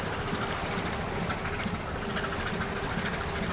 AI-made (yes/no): no